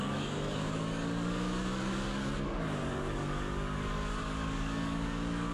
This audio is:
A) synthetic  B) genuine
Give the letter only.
A